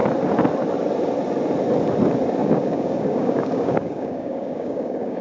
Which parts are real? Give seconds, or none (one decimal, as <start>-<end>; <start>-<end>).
0.0-2.4